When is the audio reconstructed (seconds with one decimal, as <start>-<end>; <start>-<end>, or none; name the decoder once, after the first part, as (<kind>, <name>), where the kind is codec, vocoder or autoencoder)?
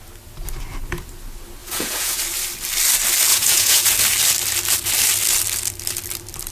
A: 1.6-2.2 (vocoder, Vocos); 3.3-3.9